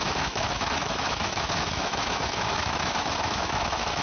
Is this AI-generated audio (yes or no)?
yes